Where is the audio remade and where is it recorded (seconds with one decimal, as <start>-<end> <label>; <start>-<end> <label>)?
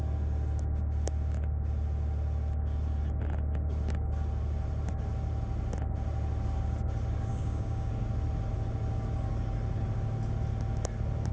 0.0-7.3 recorded; 7.3-7.9 remade; 7.9-11.3 recorded